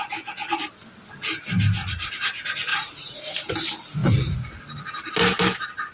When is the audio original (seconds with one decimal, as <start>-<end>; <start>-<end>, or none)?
0.0-1.8; 2.3-2.7; 3.2-5.9